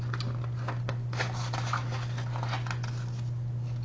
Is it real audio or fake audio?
real